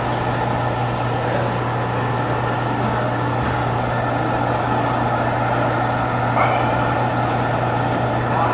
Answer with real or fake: real